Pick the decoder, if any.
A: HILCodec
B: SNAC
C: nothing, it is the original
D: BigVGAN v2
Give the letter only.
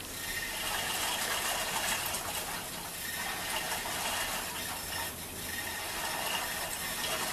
C